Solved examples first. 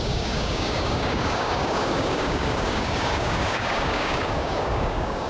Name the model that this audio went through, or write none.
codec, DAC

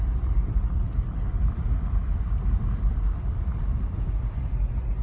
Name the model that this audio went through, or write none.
none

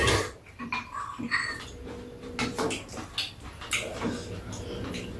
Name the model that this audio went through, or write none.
none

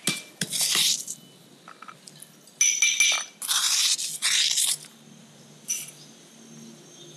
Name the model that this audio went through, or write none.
none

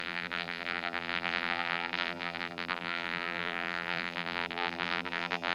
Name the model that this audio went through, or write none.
vocoder, BigVGAN v2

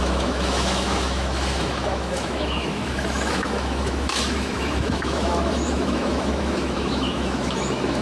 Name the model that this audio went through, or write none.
autoencoder, DAC-VAE